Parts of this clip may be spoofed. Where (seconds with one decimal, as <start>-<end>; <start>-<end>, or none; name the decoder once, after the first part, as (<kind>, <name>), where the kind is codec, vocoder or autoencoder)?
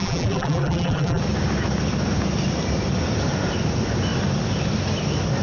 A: 0.0-1.2 (vocoder, BigVGAN v2)